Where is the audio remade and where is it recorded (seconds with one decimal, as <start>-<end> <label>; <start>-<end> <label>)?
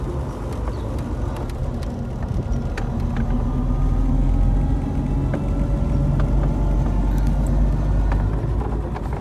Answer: 0.0-9.2 recorded